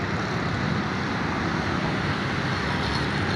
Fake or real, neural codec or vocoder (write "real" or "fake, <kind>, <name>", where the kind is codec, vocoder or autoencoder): real